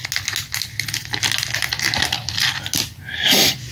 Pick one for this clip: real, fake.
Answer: real